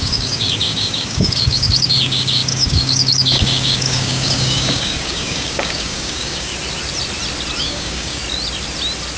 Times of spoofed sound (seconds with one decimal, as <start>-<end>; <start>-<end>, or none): 0.0-6.5; 7.6-8.2